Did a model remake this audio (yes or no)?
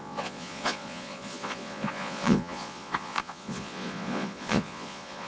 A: yes